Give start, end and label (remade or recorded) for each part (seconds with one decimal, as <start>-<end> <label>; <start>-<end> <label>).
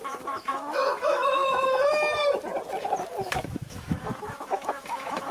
0.0-2.2 remade; 2.2-3.2 recorded; 3.2-5.3 remade